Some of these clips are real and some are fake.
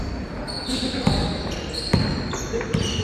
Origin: real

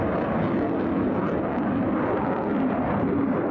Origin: real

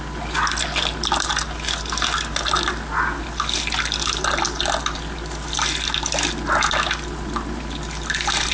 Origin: real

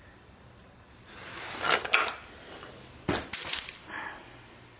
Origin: real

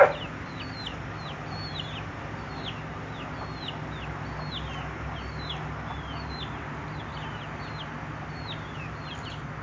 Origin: real